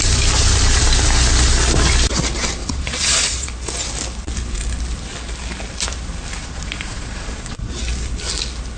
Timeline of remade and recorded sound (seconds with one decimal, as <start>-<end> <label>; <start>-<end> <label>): 0.0-2.6 recorded; 2.6-3.5 remade; 3.5-6.4 recorded; 6.4-7.8 remade; 7.8-8.8 recorded